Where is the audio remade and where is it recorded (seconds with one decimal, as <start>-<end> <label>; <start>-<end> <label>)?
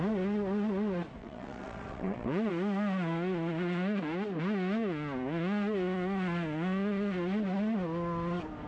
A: 0.0-1.2 recorded; 1.2-2.5 remade; 2.5-8.7 recorded